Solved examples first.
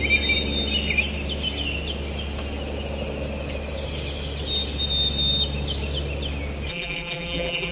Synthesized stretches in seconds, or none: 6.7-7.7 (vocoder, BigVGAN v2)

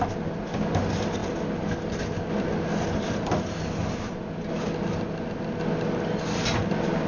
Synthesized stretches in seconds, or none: none